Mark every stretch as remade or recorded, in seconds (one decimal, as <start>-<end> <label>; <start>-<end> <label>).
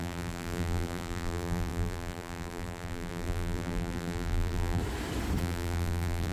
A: 0.0-4.8 remade; 4.8-5.4 recorded; 5.4-6.3 remade